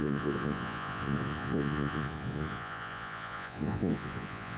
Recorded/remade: remade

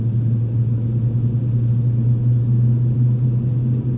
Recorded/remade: recorded